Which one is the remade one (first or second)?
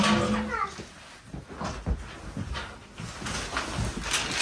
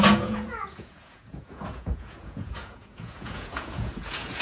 second